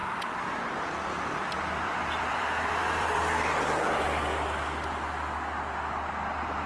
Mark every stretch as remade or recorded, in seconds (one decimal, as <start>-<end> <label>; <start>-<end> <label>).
0.0-4.0 remade; 4.0-6.7 recorded